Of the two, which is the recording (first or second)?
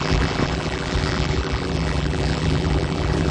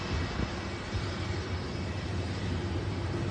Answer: second